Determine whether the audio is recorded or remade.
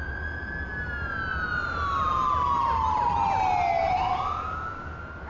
recorded